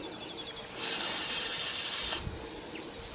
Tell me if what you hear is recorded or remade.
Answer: recorded